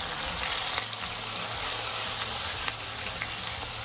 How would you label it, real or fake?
real